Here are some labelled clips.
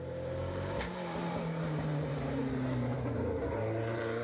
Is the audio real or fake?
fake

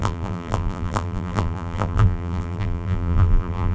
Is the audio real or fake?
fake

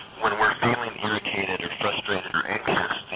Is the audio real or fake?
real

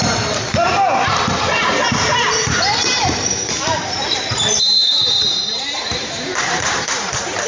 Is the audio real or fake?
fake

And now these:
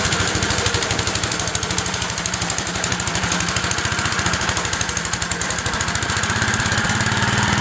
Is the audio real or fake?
fake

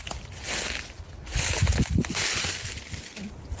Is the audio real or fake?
real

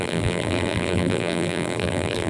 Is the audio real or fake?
fake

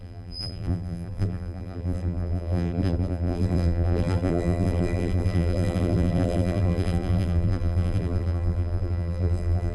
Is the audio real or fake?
fake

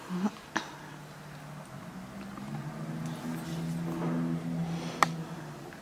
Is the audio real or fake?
real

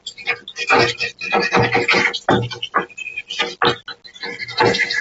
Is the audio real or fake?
real